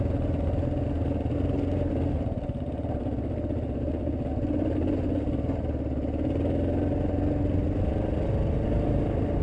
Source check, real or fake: real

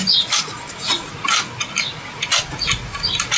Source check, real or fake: real